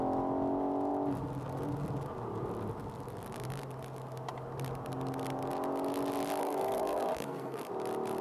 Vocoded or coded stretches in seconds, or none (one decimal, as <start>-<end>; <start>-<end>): 6.4-7.7